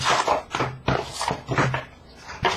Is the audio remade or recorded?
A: recorded